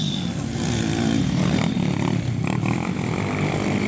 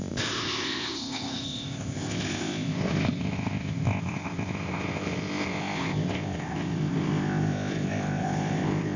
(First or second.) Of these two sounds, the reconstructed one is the second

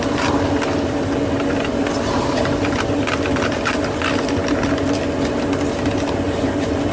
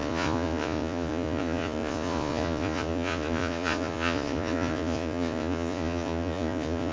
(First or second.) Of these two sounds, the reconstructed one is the second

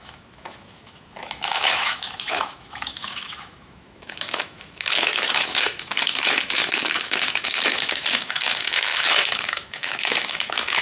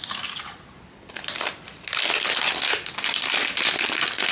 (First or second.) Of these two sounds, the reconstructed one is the first